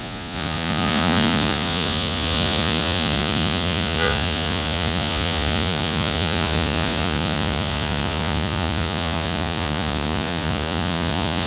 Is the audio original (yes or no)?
no